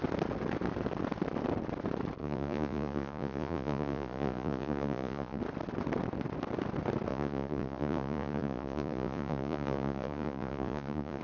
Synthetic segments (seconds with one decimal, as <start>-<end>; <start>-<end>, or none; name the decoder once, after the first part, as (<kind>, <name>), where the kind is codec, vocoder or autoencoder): 2.2-5.4 (vocoder, Vocos); 7.1-11.2